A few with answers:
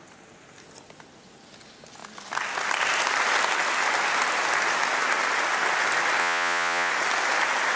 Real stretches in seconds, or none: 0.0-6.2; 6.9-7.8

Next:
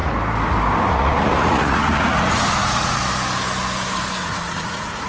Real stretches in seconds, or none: 0.0-0.9; 3.0-4.2

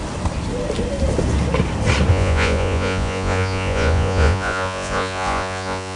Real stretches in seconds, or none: 0.0-2.1

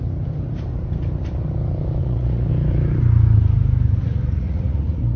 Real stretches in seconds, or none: 0.0-2.0; 2.5-4.0

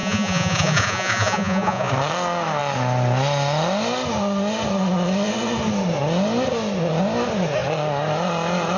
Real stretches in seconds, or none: 1.9-8.8